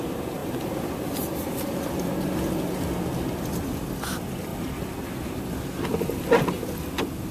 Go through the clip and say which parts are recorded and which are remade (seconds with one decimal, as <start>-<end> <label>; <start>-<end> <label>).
0.0-0.4 recorded; 0.4-2.7 remade; 2.7-7.3 recorded